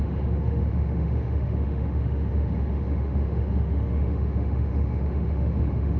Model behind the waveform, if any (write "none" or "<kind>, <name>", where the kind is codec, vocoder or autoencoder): autoencoder, DAC-VAE